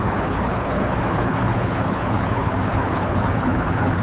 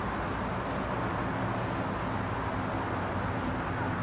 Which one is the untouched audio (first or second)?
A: second